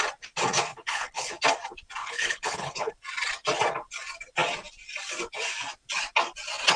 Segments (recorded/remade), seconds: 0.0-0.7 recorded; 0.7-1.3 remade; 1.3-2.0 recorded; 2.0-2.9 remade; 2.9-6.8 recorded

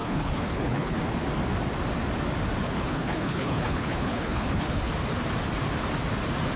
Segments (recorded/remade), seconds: 0.0-1.0 remade; 1.0-2.6 recorded; 2.6-4.9 remade; 4.9-6.6 recorded